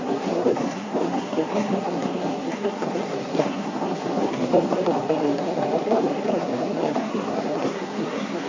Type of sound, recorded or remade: remade